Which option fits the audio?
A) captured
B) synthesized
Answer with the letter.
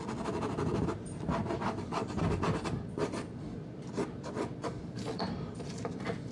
B